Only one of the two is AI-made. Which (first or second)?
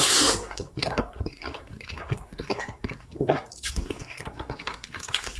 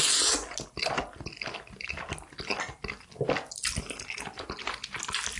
first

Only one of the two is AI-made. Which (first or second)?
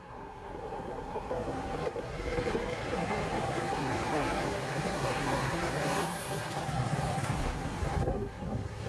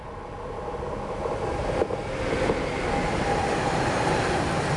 first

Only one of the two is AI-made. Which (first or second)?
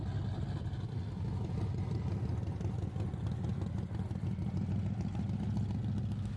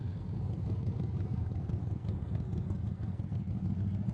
second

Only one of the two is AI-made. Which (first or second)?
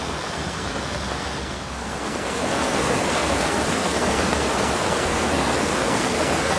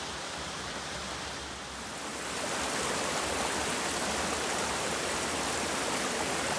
first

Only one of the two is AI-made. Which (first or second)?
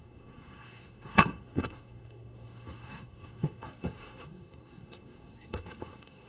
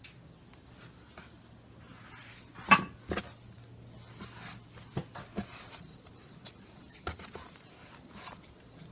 first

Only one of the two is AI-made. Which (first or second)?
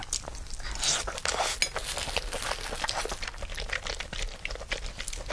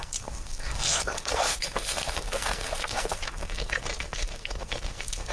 second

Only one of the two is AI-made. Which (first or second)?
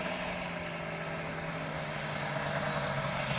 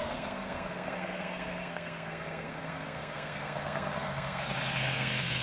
second